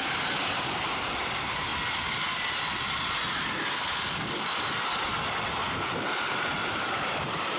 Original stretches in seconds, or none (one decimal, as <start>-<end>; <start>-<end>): 1.7-6.1